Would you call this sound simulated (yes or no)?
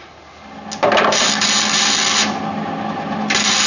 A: no